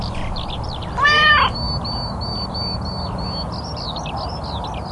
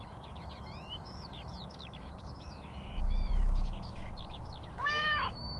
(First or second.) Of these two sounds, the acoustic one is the first